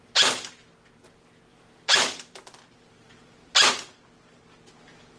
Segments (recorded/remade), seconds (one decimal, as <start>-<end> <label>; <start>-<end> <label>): 0.0-1.5 recorded; 1.5-3.7 remade; 3.7-5.2 recorded